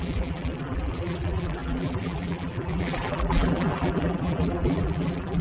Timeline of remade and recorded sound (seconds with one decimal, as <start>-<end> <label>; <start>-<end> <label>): 0.0-5.4 remade